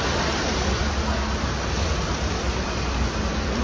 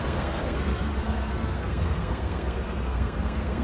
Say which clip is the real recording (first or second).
first